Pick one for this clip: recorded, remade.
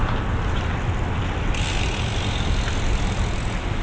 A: recorded